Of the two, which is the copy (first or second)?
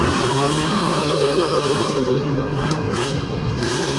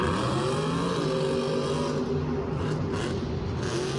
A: first